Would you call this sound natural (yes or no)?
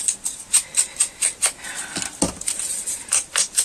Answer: yes